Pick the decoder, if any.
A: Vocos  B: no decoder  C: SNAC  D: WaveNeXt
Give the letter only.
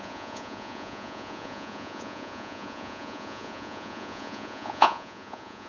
A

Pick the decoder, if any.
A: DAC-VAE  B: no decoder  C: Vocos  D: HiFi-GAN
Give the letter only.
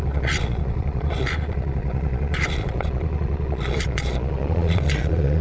C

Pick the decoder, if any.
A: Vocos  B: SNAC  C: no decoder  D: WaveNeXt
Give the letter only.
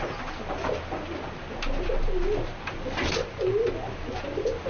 C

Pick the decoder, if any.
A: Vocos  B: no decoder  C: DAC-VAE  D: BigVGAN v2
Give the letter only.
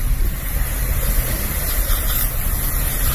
B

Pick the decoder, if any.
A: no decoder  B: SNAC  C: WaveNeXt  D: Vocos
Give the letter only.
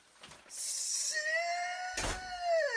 A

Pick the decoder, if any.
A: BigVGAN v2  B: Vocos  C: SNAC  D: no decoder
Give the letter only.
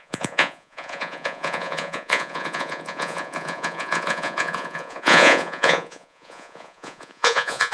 B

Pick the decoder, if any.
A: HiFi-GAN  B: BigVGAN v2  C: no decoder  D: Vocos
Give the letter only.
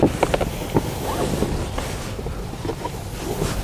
C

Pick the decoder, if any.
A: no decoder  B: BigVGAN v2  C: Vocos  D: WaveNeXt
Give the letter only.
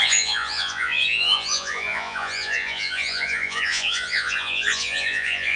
C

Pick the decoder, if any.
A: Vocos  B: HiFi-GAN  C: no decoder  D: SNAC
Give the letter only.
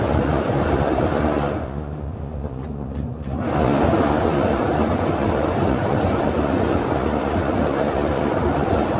A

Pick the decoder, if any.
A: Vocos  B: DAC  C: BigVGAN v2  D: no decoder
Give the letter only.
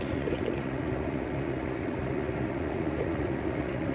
A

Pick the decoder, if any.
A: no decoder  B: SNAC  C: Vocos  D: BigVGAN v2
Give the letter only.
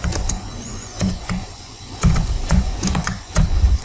C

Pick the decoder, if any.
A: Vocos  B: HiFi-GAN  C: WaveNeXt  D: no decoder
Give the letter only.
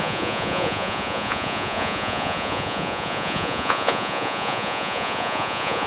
A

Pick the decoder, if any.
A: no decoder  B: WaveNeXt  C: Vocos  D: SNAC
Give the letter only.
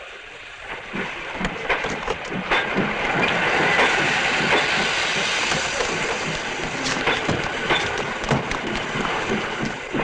A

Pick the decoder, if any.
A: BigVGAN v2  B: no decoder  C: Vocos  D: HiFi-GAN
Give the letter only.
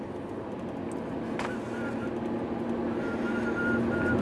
B